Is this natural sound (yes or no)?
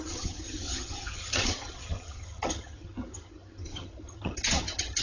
no